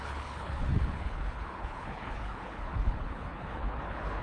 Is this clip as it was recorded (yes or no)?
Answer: no